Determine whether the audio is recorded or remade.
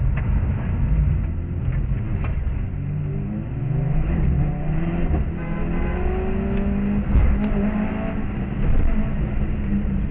recorded